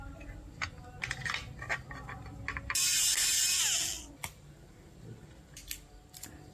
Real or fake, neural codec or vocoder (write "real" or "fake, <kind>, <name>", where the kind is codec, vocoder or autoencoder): real